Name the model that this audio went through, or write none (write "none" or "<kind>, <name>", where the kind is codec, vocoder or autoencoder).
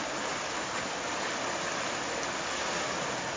none